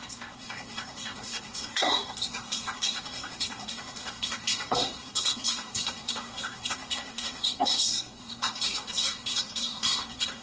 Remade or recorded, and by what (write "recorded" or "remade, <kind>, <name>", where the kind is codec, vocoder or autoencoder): remade, codec, SNAC